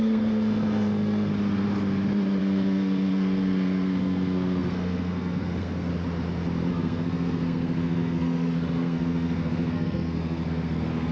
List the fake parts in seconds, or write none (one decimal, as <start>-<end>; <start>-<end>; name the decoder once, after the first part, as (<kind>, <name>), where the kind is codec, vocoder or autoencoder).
0.0-1.3 (codec, SNAC); 2.4-5.9; 6.7-11.1